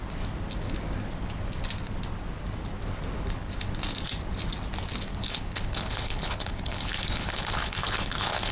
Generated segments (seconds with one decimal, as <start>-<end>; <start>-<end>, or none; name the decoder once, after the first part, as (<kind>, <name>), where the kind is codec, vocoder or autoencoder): 5.1-8.5 (codec, HILCodec)